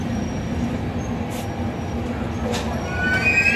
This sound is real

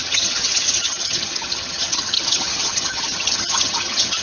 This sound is fake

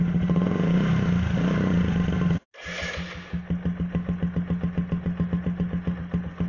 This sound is real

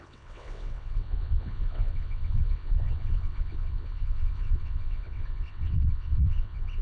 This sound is fake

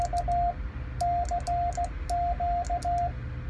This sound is real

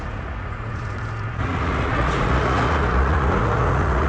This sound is fake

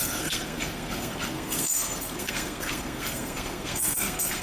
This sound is fake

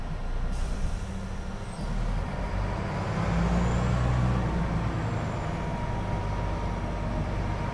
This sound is real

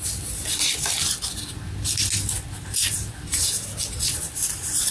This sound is real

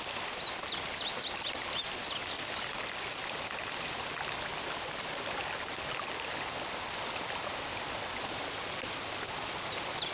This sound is real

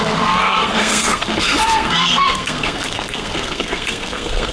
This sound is fake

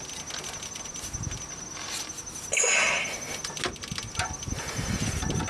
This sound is real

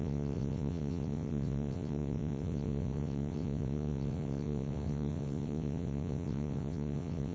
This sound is fake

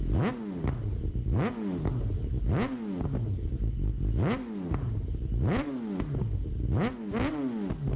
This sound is real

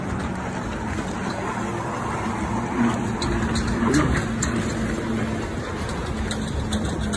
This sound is real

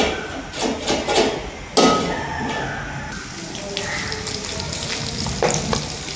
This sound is real